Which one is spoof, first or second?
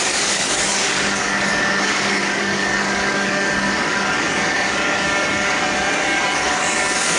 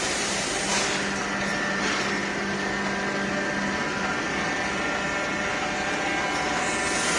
first